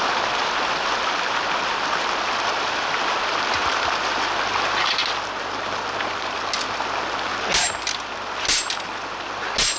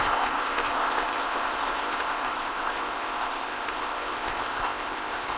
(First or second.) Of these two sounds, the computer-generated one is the second